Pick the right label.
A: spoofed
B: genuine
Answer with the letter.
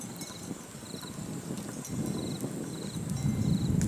B